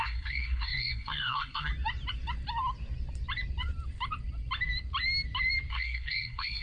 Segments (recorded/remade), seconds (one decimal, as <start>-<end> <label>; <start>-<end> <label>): 0.0-1.7 remade; 1.7-5.7 recorded; 5.7-6.6 remade